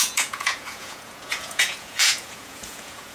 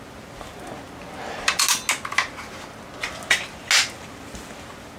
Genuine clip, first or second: second